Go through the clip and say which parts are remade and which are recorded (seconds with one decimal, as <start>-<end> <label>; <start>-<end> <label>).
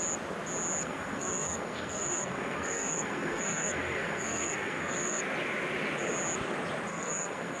0.0-0.8 recorded; 0.8-5.2 remade; 5.2-6.9 recorded; 6.9-7.6 remade